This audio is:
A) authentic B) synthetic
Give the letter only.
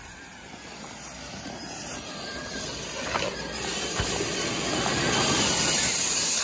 A